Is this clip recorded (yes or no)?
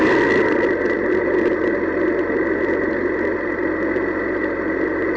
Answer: yes